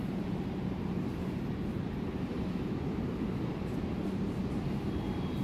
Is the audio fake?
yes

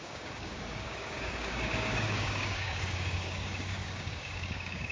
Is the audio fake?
yes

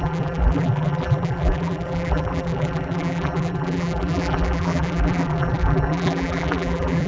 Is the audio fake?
yes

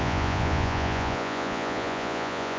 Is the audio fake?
yes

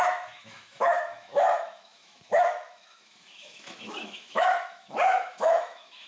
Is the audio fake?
yes